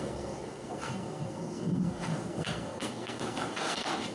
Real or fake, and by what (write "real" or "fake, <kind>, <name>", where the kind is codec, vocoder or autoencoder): fake, codec, SNAC